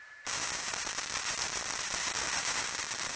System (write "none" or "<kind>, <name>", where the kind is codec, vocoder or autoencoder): none